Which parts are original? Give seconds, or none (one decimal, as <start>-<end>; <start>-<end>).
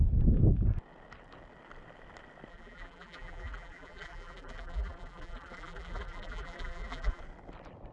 0.0-2.5; 7.2-7.9